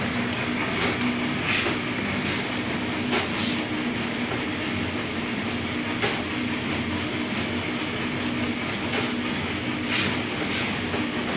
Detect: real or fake real